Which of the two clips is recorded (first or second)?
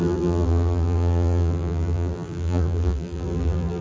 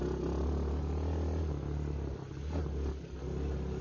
second